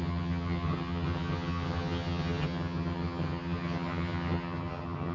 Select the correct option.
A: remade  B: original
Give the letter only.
A